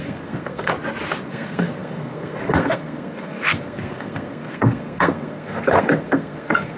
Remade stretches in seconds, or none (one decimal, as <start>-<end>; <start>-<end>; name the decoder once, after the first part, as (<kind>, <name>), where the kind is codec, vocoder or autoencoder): 0.0-0.7 (codec, SNAC); 1.3-6.8